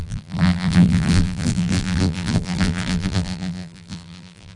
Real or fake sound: fake